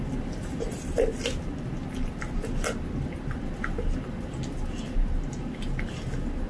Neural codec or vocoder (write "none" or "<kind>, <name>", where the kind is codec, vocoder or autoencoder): none